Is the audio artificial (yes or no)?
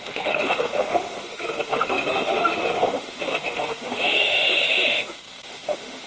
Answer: yes